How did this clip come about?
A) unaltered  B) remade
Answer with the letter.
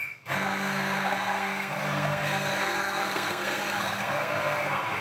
B